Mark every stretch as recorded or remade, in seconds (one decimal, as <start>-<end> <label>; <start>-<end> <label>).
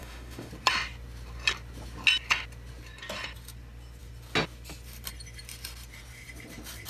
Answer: 0.0-0.5 remade; 0.5-6.9 recorded